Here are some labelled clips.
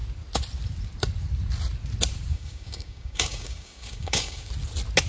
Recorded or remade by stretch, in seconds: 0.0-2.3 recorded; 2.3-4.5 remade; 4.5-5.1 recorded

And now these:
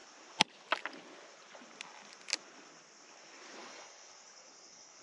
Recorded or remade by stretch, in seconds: 0.0-3.6 recorded; 3.6-5.0 remade